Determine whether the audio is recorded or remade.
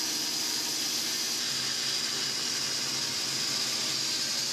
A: recorded